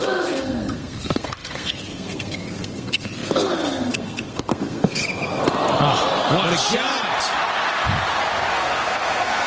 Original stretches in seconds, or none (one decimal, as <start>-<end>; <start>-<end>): 5.0-8.5